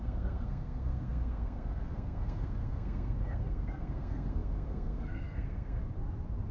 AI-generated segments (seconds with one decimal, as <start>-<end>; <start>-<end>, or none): 0.0-5.8

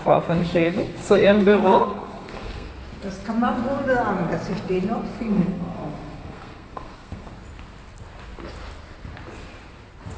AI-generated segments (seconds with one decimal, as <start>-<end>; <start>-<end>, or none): 0.4-2.7; 5.1-7.3

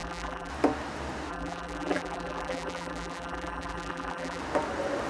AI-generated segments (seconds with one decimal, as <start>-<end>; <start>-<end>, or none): 0.0-0.5; 1.3-4.4

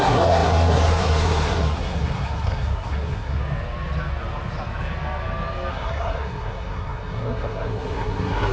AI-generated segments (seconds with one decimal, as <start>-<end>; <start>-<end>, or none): 0.0-3.4; 5.7-8.5

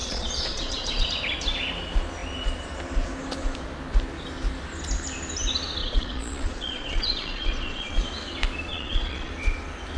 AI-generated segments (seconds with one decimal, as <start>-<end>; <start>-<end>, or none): 0.0-1.1; 5.8-8.0; 8.7-9.3

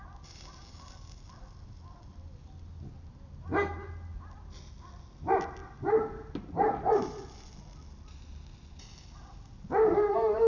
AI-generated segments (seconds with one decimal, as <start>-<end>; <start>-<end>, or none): none

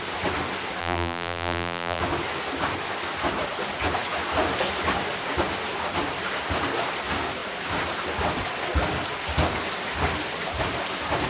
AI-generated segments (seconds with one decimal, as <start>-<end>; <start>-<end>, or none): 0.8-2.0